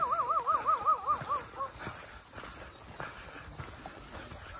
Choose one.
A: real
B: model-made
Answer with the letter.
A